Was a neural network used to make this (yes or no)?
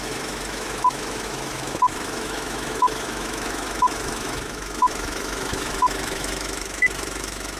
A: yes